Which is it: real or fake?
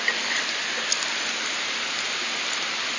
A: real